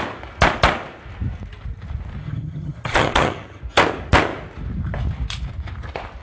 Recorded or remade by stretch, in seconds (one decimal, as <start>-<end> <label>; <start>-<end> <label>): 0.0-2.2 recorded; 2.2-3.6 remade; 3.6-6.2 recorded